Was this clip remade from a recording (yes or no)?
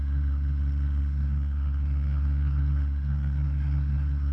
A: yes